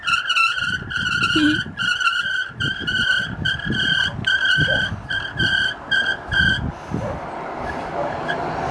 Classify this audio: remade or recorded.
recorded